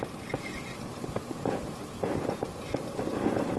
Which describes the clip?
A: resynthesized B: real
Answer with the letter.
B